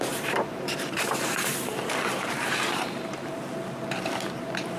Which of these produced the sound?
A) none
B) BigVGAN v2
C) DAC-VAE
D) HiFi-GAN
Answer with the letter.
B